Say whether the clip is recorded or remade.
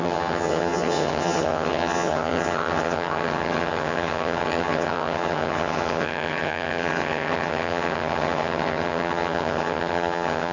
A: remade